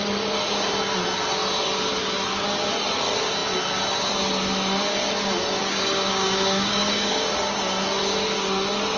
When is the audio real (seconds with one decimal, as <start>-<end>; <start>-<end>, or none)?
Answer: 0.0-5.6; 7.3-9.0